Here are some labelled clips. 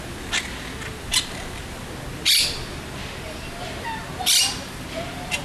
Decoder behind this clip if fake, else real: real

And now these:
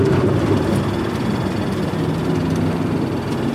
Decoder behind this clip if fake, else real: real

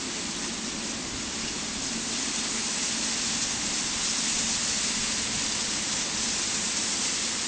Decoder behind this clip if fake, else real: real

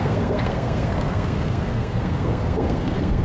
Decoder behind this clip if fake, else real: fake, codec, SNAC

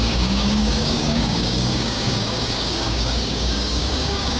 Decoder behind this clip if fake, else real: fake, codec, DAC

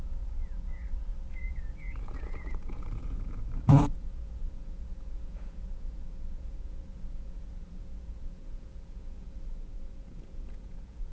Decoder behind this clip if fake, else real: fake, vocoder, Vocos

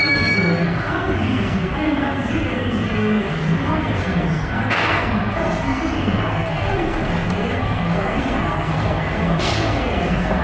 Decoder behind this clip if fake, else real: fake, codec, SNAC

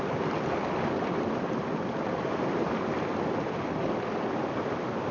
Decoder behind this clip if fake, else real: real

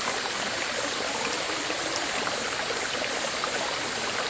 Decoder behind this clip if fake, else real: real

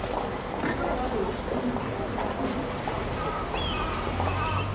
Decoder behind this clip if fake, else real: real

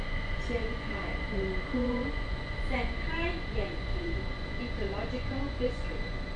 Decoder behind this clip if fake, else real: fake, vocoder, Vocos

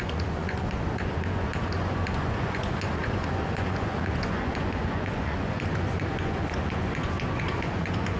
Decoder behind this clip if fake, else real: fake, vocoder, Vocos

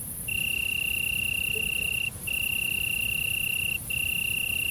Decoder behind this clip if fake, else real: real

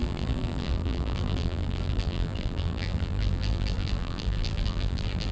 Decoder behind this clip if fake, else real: fake, vocoder, BigVGAN v2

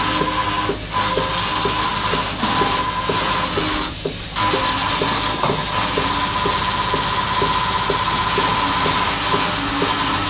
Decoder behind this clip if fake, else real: real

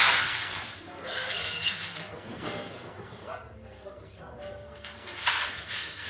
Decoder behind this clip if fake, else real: fake, codec, SNAC